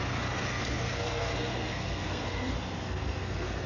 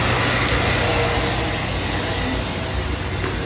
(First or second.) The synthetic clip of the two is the first